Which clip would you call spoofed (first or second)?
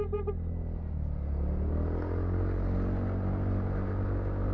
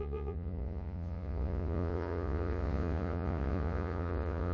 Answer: second